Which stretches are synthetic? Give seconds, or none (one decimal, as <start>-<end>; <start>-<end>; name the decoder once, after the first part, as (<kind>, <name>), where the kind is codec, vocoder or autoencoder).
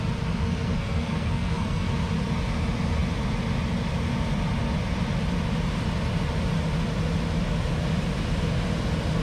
0.4-1.9 (codec, SNAC)